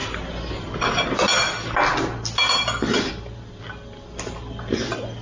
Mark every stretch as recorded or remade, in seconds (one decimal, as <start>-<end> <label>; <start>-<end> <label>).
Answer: 0.0-5.2 recorded